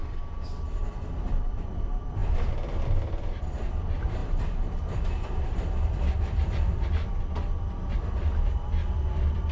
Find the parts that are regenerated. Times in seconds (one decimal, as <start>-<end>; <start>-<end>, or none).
0.9-9.5